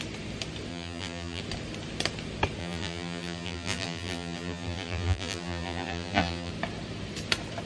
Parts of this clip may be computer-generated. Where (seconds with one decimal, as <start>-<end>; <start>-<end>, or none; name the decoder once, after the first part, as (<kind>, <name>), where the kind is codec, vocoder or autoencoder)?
0.7-1.4 (vocoder, BigVGAN v2); 2.6-6.5